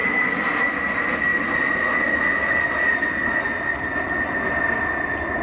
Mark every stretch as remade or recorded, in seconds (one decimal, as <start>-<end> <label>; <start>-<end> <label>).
0.0-5.4 recorded